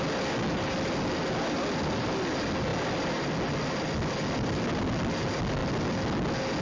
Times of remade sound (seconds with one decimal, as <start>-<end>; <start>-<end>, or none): none